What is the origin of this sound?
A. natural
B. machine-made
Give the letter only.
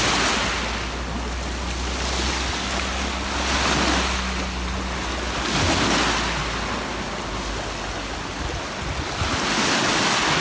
A